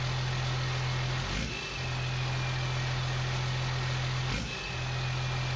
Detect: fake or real real